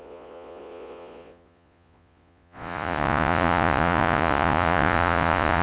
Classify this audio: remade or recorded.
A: remade